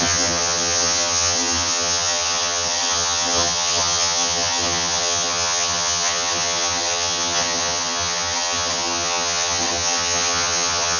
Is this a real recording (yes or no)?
no